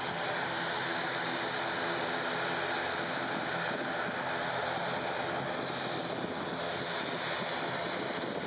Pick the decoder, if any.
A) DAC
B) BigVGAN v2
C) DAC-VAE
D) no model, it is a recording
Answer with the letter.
D